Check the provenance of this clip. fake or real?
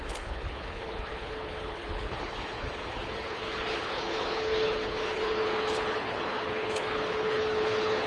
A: fake